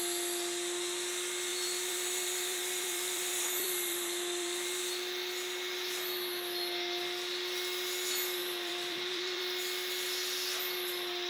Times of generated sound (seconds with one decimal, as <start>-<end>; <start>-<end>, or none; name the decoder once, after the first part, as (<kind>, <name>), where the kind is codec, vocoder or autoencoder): 1.5-4.8 (vocoder, BigVGAN v2); 8.4-9.4